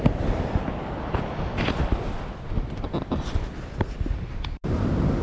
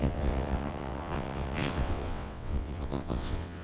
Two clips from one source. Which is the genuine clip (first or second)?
first